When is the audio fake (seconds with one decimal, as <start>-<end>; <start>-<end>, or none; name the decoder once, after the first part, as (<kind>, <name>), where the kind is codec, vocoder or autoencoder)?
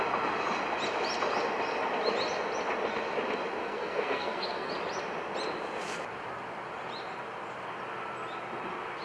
3.6-4.7 (codec, SNAC)